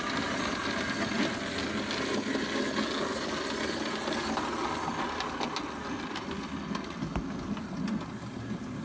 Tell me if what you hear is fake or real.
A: real